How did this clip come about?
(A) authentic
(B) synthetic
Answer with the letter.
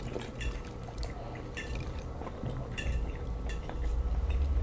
B